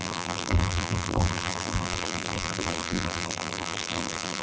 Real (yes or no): no